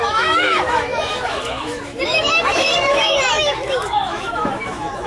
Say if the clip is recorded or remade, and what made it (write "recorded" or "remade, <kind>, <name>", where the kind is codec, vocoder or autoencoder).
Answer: remade, autoencoder, DAC-VAE